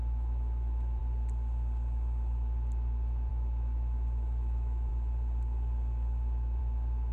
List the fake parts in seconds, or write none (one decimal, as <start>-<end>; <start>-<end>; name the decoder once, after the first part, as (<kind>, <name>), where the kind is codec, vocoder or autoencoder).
0.0-1.0 (autoencoder, DAC-VAE); 3.3-4.9; 6.6-7.1